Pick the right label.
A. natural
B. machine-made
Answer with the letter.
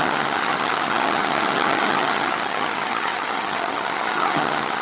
B